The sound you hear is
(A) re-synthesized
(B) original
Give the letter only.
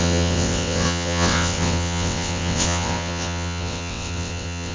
A